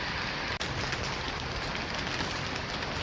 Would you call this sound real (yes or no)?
yes